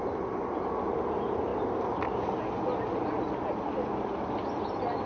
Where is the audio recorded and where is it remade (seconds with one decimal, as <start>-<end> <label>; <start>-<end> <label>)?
0.0-5.1 recorded

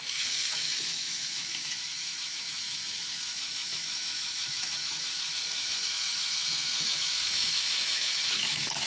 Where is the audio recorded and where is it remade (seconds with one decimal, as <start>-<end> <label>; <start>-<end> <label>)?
0.0-8.9 remade

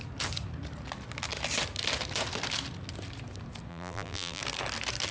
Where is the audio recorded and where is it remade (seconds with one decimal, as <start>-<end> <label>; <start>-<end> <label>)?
0.0-3.7 recorded; 3.7-4.4 remade; 4.4-5.1 recorded

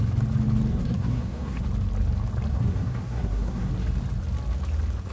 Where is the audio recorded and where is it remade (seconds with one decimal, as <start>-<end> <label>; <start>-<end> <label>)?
0.0-0.7 recorded; 0.7-1.6 remade; 1.6-2.5 recorded; 2.5-3.7 remade; 3.7-5.1 recorded